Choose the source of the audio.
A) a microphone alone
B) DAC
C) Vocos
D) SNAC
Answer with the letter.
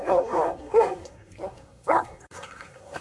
D